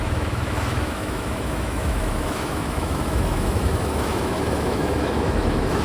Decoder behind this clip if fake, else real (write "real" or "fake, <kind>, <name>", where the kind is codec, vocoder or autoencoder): fake, autoencoder, DAC-VAE